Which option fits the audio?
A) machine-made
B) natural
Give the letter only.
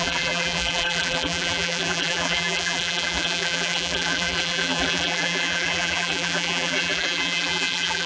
A